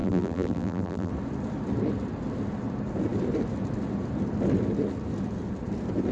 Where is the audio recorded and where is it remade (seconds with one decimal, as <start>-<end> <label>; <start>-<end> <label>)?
0.0-1.1 remade; 1.1-6.1 recorded